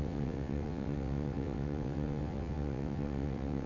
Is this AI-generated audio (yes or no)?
yes